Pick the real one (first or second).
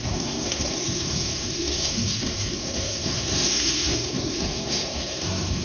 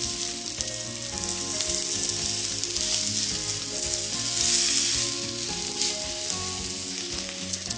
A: second